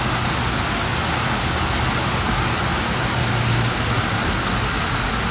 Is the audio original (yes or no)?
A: yes